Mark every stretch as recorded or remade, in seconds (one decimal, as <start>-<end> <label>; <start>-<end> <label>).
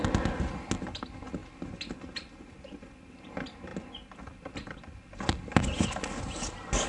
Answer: 0.0-6.9 recorded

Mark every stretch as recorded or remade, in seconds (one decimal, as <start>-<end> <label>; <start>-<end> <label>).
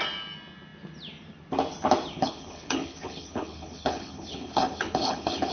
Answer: 0.0-2.1 recorded; 2.1-5.5 remade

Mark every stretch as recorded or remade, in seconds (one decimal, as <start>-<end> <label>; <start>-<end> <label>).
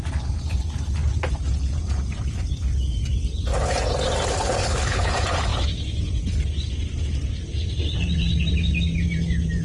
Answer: 0.0-4.6 recorded; 4.6-5.1 remade; 5.1-9.6 recorded